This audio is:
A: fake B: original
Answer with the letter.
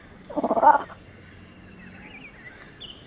B